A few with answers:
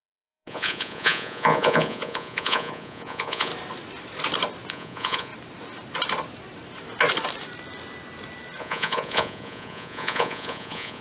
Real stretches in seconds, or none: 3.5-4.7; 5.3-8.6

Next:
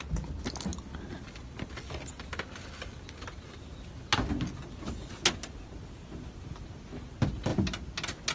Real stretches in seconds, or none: 0.0-8.3

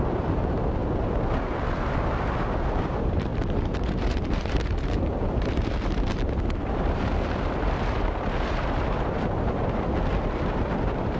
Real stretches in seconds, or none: 0.8-2.8

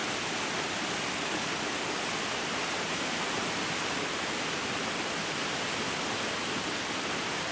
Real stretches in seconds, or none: 0.0-7.5